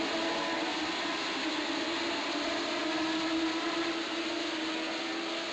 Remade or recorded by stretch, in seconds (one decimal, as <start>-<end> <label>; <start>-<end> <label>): 0.0-5.5 recorded